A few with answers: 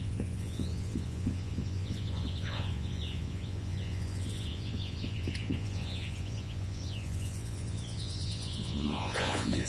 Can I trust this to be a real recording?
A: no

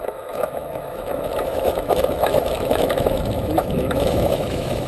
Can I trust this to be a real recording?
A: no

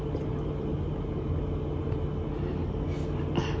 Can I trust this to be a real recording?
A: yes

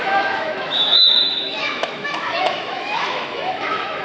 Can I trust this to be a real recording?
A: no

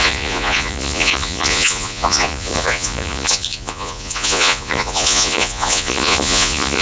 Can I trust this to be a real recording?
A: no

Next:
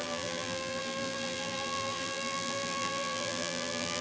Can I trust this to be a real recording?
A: no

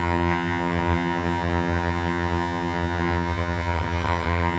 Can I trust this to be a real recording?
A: no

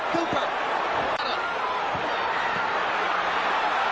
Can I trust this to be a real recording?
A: yes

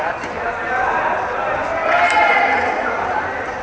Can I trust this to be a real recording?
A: yes